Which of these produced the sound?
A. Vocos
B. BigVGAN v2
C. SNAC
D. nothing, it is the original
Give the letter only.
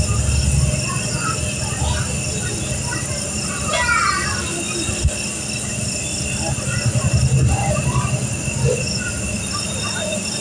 D